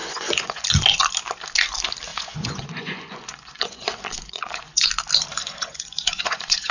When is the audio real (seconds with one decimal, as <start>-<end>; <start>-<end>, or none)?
0.6-2.1; 4.9-5.4